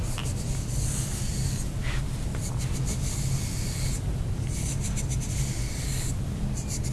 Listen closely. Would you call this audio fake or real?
real